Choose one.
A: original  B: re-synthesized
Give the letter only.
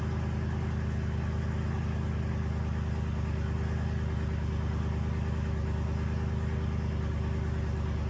A